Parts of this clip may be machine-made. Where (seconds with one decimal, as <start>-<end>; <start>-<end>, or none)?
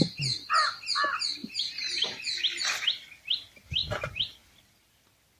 1.4-2.4